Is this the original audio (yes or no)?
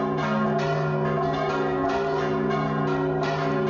yes